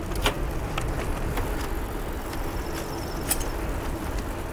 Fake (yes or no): no